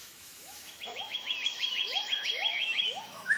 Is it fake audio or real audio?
fake